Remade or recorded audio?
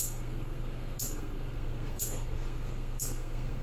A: remade